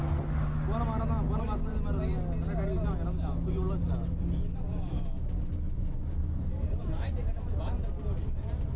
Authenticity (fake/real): real